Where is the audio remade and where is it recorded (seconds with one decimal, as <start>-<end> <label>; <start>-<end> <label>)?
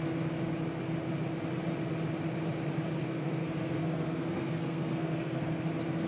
0.0-3.0 recorded; 3.0-5.6 remade; 5.6-6.1 recorded